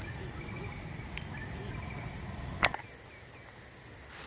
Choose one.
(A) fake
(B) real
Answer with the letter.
B